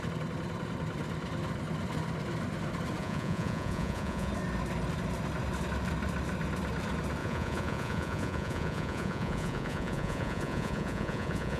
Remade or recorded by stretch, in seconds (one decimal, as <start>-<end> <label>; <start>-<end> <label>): 0.0-3.0 recorded; 3.0-4.3 remade; 4.3-7.2 recorded; 7.2-11.6 remade